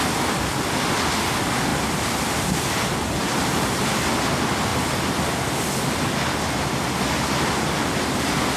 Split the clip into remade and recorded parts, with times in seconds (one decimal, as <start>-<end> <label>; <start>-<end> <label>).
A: 0.0-1.7 recorded; 1.7-3.2 remade; 3.2-8.6 recorded

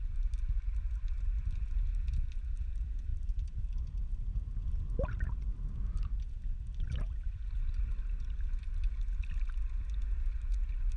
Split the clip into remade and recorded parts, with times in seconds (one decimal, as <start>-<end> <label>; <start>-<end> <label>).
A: 0.0-3.1 recorded; 3.1-4.3 remade; 4.3-11.0 recorded

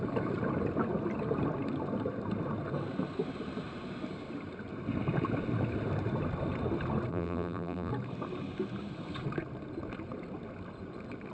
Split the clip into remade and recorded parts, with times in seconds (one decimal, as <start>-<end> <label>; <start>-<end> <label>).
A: 0.0-7.1 recorded; 7.1-7.9 remade; 7.9-11.3 recorded

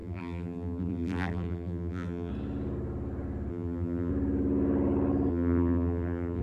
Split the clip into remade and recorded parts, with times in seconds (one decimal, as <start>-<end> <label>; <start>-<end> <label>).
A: 0.0-2.3 remade; 2.3-3.5 recorded; 3.5-4.1 remade; 4.1-5.3 recorded; 5.3-6.4 remade

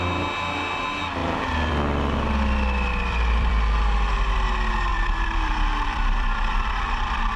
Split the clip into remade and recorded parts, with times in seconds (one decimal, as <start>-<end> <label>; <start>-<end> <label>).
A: 0.0-2.9 recorded; 2.9-3.5 remade; 3.5-4.9 recorded; 4.9-7.4 remade

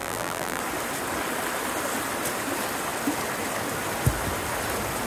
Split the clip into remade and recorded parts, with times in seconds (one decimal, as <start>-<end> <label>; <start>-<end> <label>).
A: 0.0-0.6 remade; 0.6-5.1 recorded